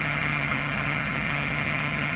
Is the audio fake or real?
fake